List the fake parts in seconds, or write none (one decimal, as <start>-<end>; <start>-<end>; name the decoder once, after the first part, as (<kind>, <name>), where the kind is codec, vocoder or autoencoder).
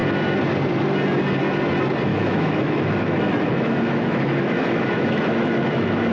2.1-6.1 (autoencoder, DAC-VAE)